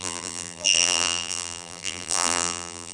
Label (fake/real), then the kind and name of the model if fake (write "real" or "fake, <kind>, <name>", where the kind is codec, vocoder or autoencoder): fake, vocoder, BigVGAN v2